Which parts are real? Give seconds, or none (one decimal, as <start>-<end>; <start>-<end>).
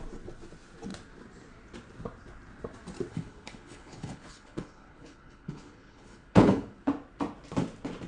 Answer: 0.0-3.1; 6.9-8.1